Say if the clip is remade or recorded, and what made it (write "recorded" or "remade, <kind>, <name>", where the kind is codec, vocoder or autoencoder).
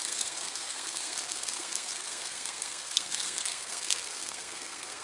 remade, codec, SNAC